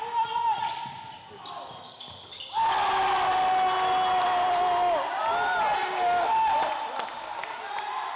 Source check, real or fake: real